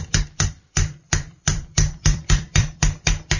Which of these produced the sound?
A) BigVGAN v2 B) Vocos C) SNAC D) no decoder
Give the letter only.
A